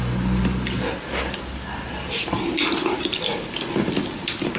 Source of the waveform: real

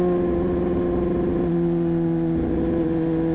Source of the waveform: real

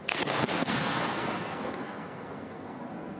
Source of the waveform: fake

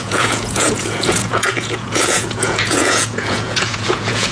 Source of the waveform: fake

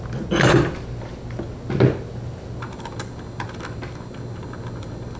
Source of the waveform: real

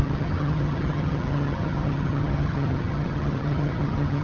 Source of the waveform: fake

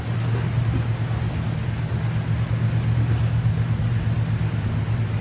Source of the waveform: real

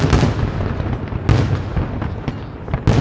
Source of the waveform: real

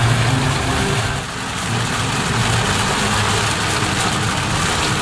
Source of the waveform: real